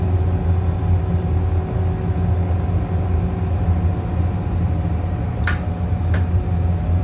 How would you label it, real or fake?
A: real